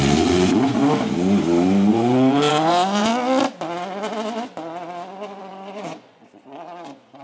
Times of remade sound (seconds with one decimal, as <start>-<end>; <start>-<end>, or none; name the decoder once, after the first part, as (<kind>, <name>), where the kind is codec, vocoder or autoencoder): 0.0-0.8 (vocoder, Vocos); 1.9-3.1; 5.4-7.2